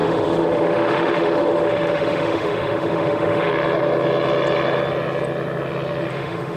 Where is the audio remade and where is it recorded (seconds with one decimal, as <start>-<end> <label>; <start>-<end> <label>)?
0.0-3.5 remade; 3.5-6.1 recorded; 6.1-6.6 remade